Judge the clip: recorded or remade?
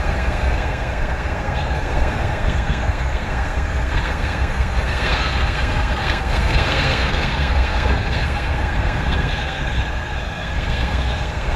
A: remade